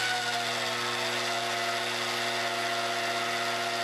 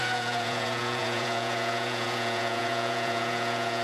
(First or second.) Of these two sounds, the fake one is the second